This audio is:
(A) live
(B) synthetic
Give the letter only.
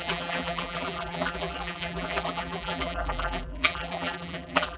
B